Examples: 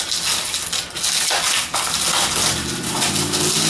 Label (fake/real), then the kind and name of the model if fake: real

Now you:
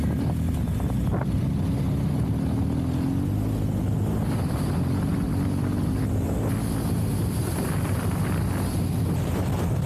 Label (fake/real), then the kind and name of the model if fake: real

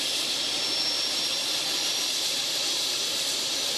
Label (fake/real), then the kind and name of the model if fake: fake, vocoder, BigVGAN v2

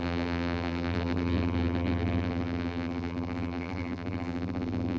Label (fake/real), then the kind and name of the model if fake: fake, vocoder, BigVGAN v2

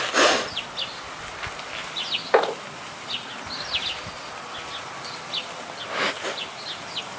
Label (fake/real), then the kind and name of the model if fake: real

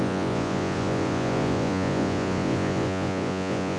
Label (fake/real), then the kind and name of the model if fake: fake, vocoder, Vocos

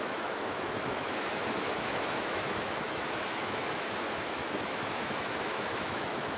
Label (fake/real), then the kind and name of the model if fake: fake, autoencoder, DAC-VAE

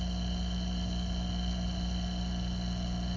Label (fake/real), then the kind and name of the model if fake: real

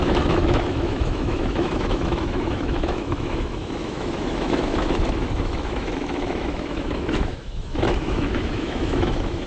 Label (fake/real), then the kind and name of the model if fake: fake, autoencoder, DAC-VAE